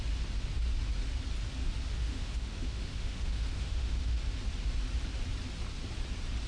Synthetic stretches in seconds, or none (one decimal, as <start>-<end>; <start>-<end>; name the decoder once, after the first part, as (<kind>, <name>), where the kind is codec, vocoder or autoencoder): 2.0-4.2 (autoencoder, DAC-VAE)